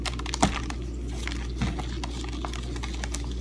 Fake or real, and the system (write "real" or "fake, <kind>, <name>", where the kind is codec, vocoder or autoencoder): real